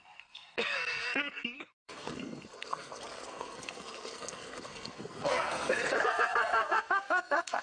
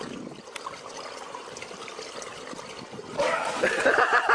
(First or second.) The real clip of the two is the second